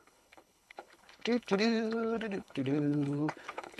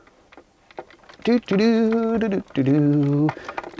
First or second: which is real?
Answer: second